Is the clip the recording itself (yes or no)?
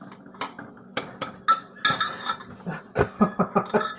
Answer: yes